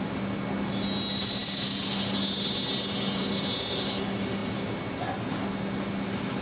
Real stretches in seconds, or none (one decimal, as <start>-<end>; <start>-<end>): 0.0-6.4